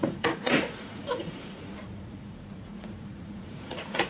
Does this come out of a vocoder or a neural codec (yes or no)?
yes